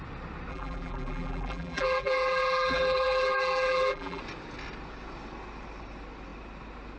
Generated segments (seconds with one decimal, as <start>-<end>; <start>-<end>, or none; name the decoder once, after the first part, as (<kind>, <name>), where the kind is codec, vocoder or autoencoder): 0.5-4.2 (vocoder, BigVGAN v2)